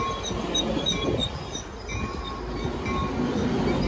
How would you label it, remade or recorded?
recorded